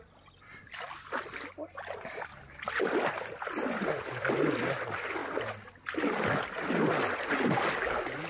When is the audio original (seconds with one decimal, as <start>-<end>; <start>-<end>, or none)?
0.0-8.3